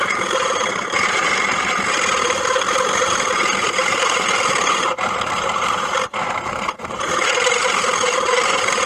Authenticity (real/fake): fake